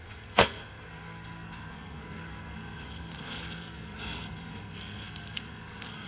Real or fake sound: fake